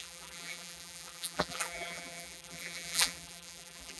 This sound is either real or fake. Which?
fake